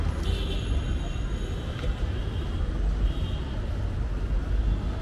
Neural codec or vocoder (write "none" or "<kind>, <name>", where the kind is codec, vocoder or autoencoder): none